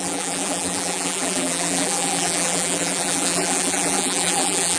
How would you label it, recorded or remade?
remade